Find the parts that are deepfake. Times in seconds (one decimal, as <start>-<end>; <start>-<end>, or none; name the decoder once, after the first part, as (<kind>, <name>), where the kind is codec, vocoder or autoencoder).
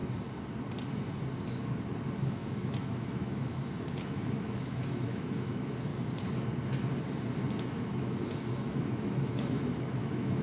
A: 2.2-5.9 (autoencoder, DAC-VAE); 7.6-10.4